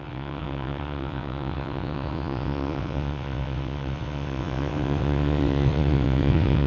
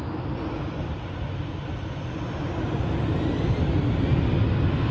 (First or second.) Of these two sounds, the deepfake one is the first